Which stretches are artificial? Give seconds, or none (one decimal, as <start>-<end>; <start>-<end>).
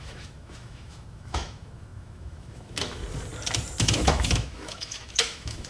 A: 0.0-3.0; 3.8-5.7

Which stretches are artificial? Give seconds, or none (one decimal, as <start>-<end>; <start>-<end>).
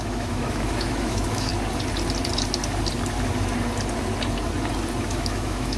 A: 0.0-1.5; 5.0-5.8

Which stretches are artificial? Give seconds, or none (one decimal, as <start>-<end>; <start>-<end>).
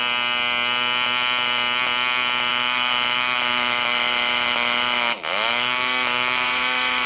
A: 2.5-7.1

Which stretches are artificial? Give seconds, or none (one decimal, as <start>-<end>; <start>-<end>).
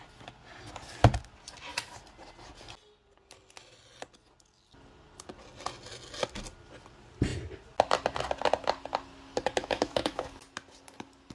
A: 9.6-10.3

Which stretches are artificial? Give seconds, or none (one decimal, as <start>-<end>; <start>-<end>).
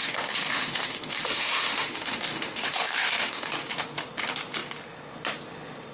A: 0.0-3.5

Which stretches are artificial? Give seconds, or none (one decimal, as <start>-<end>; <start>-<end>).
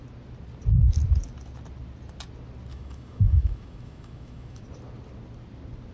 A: 2.7-4.6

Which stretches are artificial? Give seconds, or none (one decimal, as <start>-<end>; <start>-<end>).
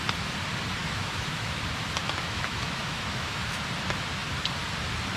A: 0.8-1.6; 2.0-3.6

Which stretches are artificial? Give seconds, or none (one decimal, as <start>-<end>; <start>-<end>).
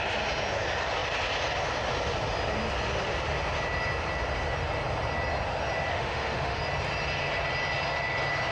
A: 5.9-6.6